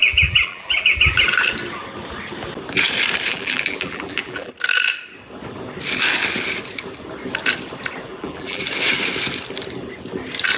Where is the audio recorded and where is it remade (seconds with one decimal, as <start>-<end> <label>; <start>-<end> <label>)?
0.0-1.2 remade; 1.2-3.3 recorded; 3.3-4.5 remade; 4.5-8.1 recorded; 8.1-8.6 remade; 8.6-10.6 recorded